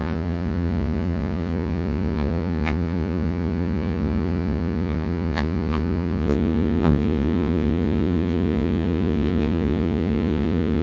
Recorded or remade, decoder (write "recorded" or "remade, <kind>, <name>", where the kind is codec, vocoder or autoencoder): remade, vocoder, Vocos